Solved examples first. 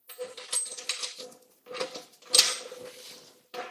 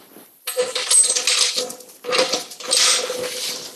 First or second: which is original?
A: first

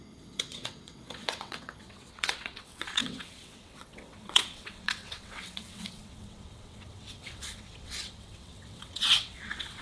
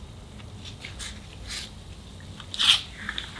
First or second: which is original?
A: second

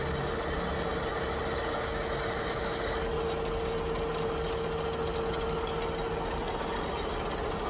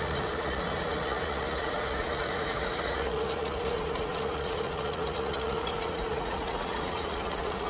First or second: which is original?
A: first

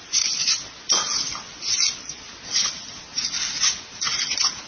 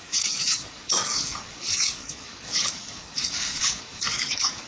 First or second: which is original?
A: first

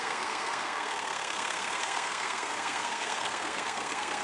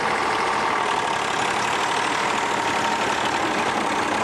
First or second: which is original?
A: second